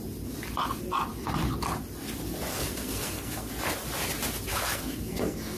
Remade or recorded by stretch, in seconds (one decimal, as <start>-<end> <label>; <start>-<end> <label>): 0.0-2.5 recorded; 2.5-3.5 remade; 3.5-4.5 recorded; 4.5-5.6 remade